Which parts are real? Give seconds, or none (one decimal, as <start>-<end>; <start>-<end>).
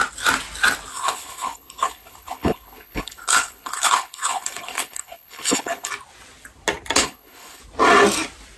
0.0-0.9; 5.9-7.0; 7.6-8.6